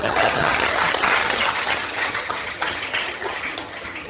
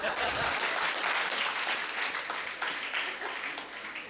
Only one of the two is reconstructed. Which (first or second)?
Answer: first